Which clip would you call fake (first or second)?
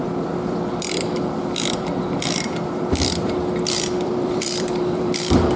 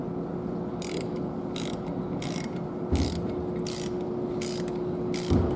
first